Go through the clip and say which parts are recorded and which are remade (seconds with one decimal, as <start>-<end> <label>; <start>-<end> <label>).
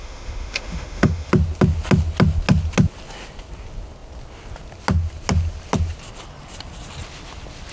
0.0-1.3 remade; 1.3-7.7 recorded